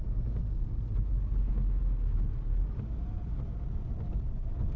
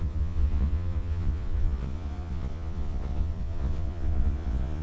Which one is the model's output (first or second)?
second